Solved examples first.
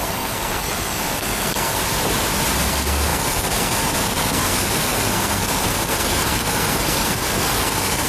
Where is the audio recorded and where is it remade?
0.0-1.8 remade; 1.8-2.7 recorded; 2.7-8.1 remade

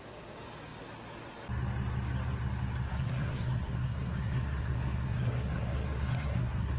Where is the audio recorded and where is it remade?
0.0-2.9 recorded; 2.9-6.8 remade

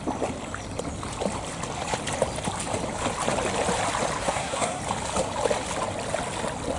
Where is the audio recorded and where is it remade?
0.0-4.2 recorded; 4.2-4.8 remade; 4.8-6.8 recorded

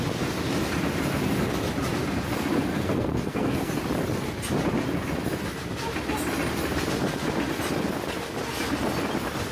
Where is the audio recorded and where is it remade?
0.0-2.7 recorded; 2.7-3.7 remade; 3.7-9.5 recorded

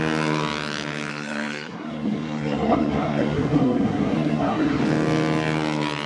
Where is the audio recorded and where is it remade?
0.0-1.1 recorded; 1.1-4.8 remade; 4.8-6.1 recorded